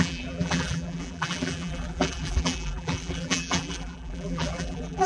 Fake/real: fake